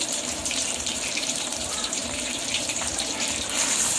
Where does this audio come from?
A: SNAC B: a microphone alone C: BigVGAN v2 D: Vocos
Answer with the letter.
C